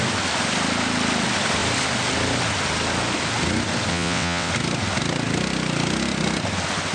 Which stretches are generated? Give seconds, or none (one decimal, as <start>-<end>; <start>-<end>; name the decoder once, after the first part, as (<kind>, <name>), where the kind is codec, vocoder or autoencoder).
3.9-4.5 (vocoder, WaveNeXt)